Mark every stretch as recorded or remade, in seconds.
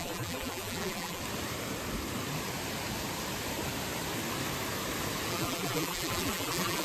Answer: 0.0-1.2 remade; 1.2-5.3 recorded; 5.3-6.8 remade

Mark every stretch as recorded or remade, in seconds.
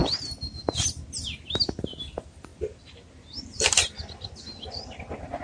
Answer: 0.0-2.1 recorded; 2.1-2.5 remade; 2.5-3.4 recorded; 3.4-5.4 remade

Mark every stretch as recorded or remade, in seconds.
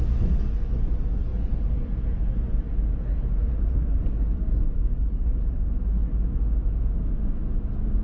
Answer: 0.0-1.3 recorded; 1.3-2.5 remade; 2.5-3.3 recorded; 3.3-4.1 remade; 4.1-8.0 recorded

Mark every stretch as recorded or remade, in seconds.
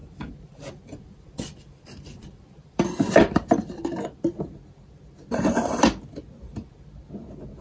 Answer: 0.0-4.4 remade; 4.4-7.6 recorded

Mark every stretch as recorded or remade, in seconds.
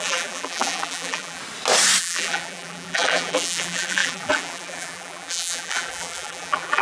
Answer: 0.0-1.4 remade; 1.4-2.0 recorded; 2.0-6.8 remade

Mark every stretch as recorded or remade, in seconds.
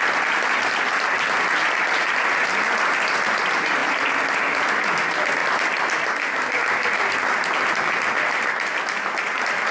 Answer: 0.0-9.7 recorded